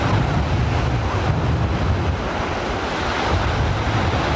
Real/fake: real